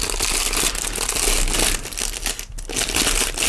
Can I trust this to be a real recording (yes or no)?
yes